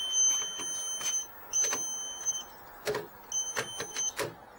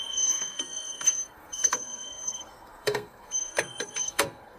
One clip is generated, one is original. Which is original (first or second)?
first